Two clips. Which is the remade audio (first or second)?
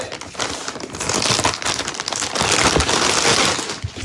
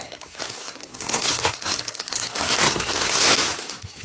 second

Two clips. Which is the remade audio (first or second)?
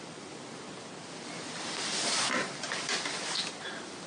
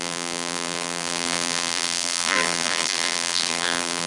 second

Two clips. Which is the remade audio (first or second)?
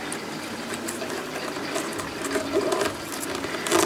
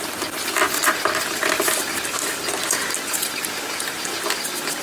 second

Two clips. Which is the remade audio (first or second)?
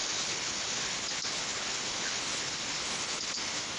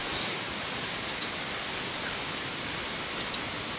first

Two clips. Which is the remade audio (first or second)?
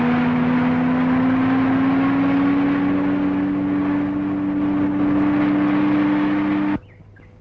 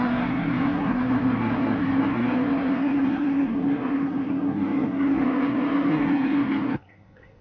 second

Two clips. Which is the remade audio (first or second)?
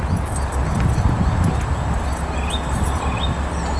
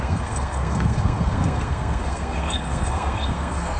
second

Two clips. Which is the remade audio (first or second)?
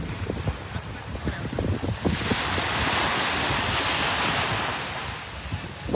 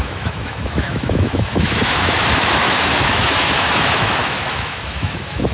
second